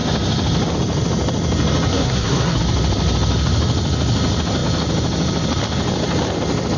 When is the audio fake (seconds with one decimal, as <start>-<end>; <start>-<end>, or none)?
1.9-2.6